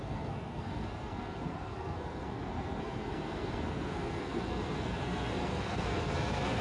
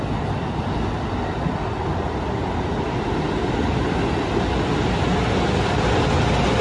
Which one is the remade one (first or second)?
first